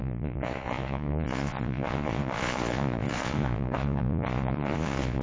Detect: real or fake fake